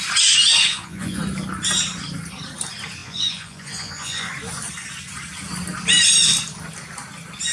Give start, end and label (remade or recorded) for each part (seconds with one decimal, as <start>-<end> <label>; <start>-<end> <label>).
0.0-0.7 recorded; 0.7-1.2 remade; 1.2-3.0 recorded; 3.0-4.3 remade; 4.3-7.5 recorded